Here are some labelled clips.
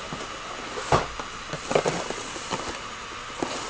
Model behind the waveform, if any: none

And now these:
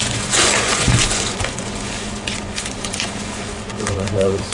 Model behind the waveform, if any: vocoder, Vocos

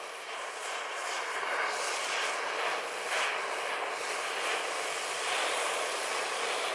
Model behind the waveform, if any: none